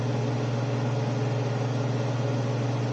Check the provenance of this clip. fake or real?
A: real